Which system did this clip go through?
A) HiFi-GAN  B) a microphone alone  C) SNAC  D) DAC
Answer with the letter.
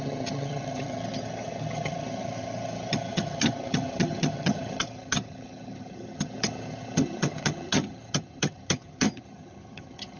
A